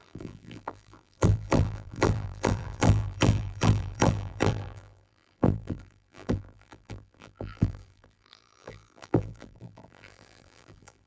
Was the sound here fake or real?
fake